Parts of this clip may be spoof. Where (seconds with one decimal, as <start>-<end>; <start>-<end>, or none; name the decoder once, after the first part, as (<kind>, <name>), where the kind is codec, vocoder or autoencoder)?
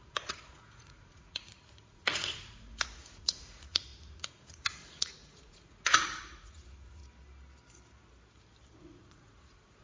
0.0-7.0 (vocoder, Vocos); 8.8-9.8